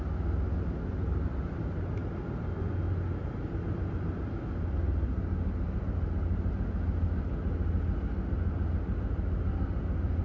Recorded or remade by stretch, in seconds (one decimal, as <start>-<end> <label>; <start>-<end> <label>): 0.0-10.2 recorded